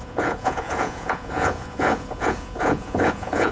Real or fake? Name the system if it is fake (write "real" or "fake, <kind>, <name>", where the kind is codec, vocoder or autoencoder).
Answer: fake, vocoder, Vocos